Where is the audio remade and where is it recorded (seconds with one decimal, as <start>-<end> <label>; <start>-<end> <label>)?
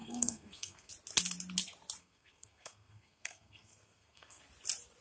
0.0-0.9 remade; 0.9-2.0 recorded; 2.0-4.4 remade; 4.4-5.0 recorded